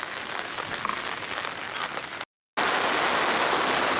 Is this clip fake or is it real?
real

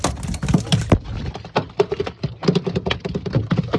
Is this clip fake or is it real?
real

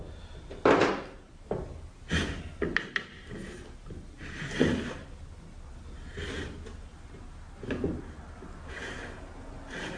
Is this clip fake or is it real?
real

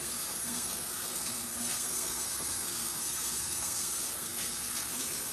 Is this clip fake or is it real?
fake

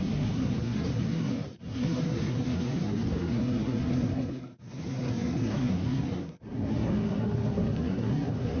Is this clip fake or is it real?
fake